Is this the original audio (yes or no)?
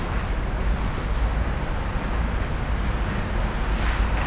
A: yes